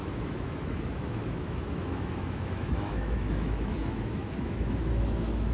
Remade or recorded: remade